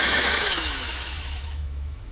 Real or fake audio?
fake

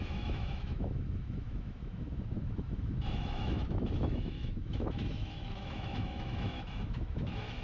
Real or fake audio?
fake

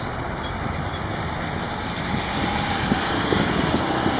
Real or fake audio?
real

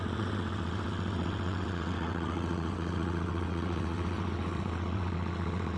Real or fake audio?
fake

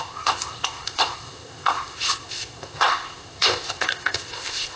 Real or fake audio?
fake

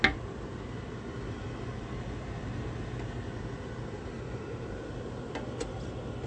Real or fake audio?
real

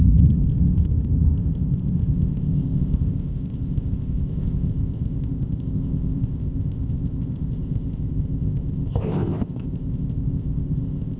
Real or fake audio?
fake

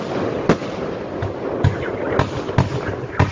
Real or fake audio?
real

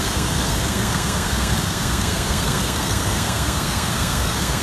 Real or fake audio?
fake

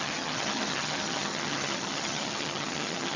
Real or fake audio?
fake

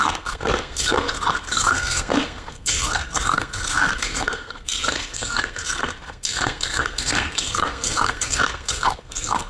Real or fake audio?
fake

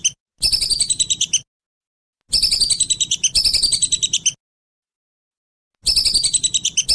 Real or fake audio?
real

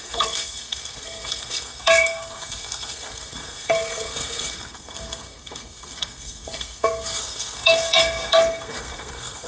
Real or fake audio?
fake